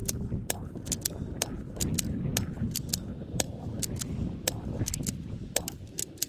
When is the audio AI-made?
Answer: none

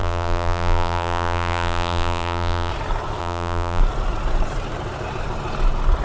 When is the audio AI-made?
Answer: 0.0-2.7 (vocoder, BigVGAN v2); 3.2-3.8

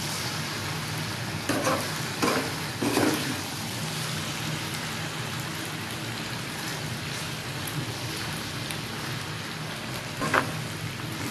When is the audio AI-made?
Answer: none

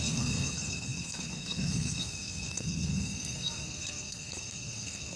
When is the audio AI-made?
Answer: 0.0-5.2 (codec, SNAC)

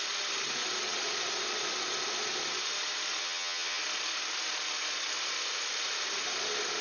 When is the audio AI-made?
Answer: 3.2-3.8 (vocoder, HiFi-GAN)